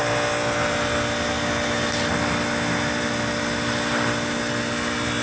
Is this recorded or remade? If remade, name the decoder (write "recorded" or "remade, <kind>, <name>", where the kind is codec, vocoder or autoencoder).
recorded